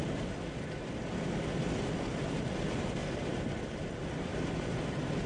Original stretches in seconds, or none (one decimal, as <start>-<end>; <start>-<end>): 0.0-3.0; 3.6-4.3